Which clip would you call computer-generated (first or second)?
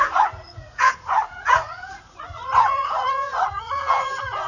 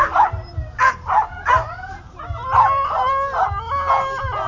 first